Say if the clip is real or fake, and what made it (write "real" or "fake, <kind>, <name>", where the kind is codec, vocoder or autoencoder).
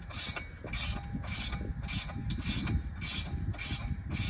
real